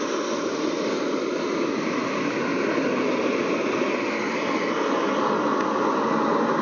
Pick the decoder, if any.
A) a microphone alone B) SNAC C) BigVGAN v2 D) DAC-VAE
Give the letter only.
A